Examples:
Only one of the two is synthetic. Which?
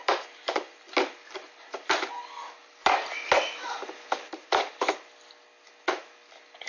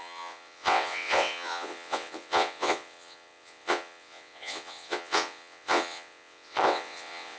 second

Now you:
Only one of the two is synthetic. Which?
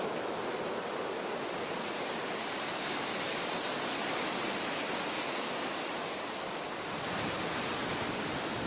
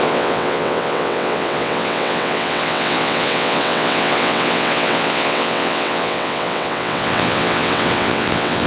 second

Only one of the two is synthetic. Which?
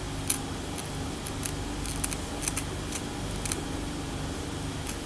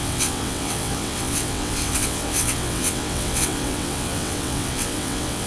second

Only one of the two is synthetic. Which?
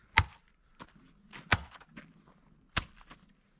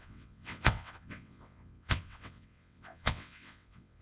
second